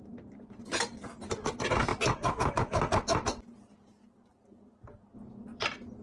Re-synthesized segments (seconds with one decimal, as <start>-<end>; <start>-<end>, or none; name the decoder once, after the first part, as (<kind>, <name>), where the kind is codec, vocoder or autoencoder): 4.3-6.0 (vocoder, BigVGAN v2)